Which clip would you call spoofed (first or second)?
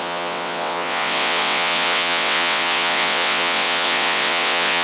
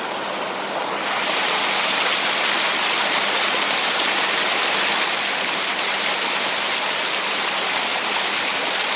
first